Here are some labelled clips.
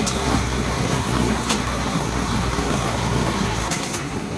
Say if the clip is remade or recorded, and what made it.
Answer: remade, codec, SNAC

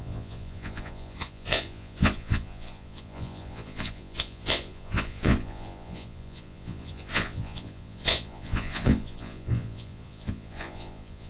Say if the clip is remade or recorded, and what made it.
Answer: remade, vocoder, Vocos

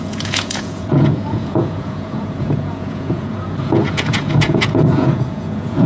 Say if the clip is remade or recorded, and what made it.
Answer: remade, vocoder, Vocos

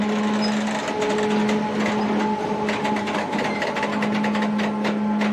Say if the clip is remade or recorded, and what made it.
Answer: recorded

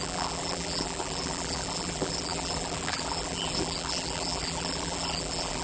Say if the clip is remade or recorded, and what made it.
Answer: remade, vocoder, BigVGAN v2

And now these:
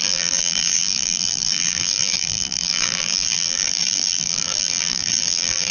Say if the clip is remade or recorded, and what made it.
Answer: remade, vocoder, BigVGAN v2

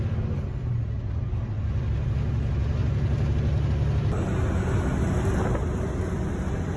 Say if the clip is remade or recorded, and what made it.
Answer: recorded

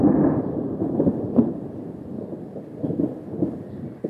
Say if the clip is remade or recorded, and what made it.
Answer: remade, vocoder, BigVGAN v2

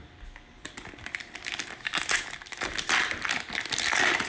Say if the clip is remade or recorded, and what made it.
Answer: recorded